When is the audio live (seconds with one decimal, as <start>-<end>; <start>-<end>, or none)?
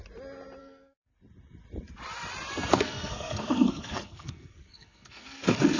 0.0-0.6; 1.1-2.7